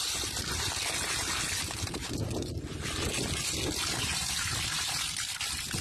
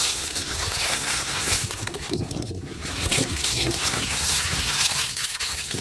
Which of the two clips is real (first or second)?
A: first